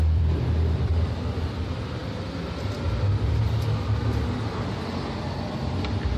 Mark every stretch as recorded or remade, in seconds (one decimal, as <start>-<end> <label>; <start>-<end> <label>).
0.0-2.0 remade; 2.0-5.7 recorded; 5.7-6.2 remade